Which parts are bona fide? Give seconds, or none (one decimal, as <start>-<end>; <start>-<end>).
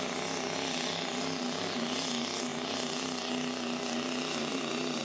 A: 0.0-5.0